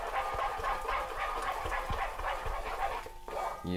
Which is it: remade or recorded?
recorded